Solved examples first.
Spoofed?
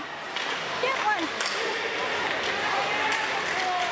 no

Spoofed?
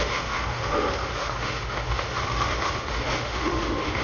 yes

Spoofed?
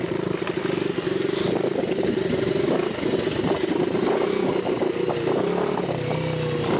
no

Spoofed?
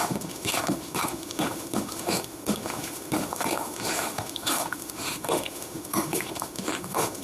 yes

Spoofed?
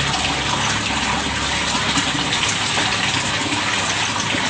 no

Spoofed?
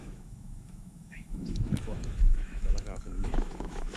yes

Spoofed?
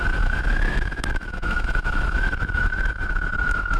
yes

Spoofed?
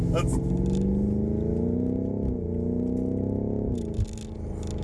no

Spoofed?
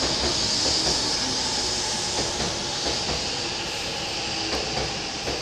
no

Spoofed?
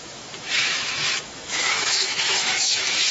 yes